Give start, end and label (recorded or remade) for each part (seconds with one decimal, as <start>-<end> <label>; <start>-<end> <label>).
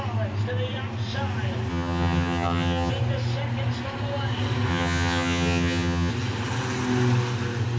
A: 0.0-1.7 recorded; 1.7-2.9 remade; 2.9-4.7 recorded; 4.7-6.1 remade; 6.1-7.8 recorded